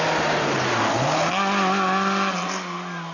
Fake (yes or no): no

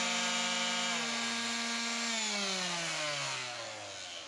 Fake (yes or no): no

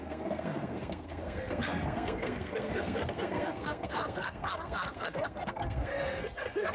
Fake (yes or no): yes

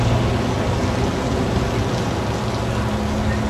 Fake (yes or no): no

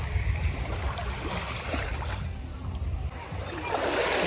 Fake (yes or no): no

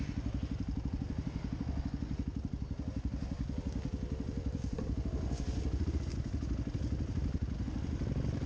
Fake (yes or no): no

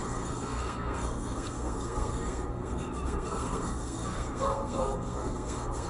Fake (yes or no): yes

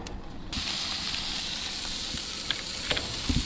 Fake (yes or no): no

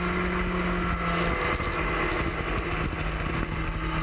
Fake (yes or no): no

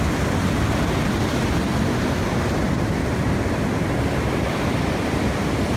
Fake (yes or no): no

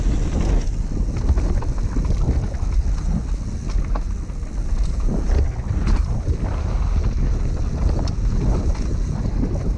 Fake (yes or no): no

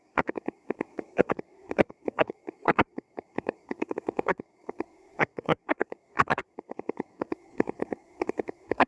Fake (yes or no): yes